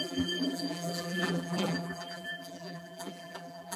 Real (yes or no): no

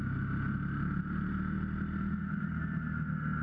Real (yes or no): yes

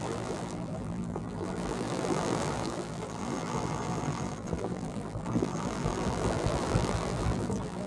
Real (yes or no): no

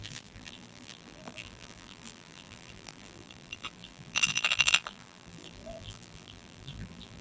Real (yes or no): no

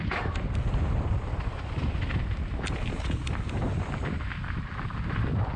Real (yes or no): yes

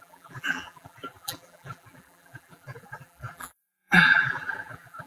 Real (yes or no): no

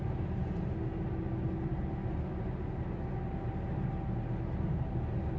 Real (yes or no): yes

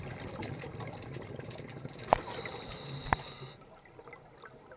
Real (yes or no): yes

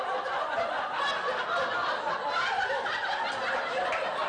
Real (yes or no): yes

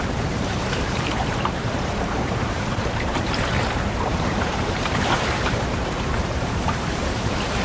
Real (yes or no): no